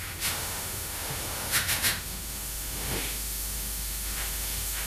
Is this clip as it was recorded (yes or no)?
no